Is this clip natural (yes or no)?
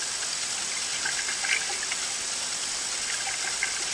yes